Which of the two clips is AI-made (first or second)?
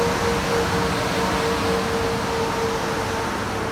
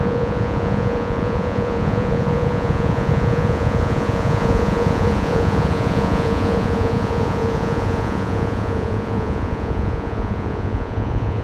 second